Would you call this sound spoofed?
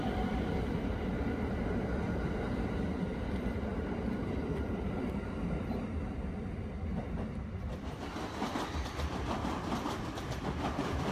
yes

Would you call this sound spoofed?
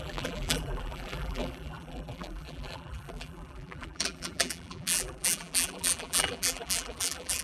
yes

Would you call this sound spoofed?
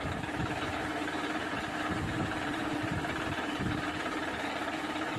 yes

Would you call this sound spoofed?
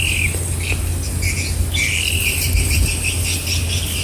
no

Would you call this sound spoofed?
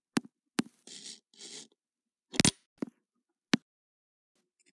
no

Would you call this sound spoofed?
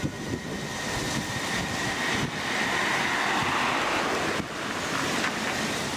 no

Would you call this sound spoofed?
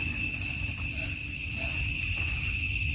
yes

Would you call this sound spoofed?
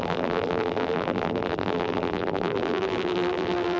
yes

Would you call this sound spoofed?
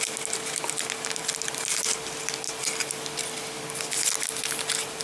no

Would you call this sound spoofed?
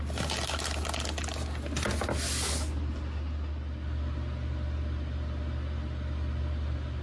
no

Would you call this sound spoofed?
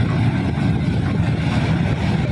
no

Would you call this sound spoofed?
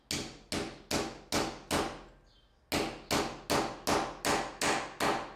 no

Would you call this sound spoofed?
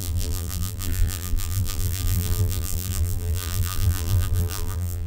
yes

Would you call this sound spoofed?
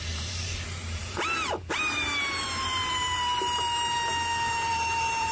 yes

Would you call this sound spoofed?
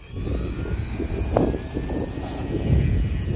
no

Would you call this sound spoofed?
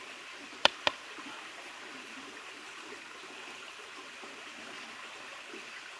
yes